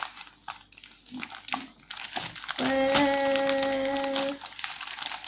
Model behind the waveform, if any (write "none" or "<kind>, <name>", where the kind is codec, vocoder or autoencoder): none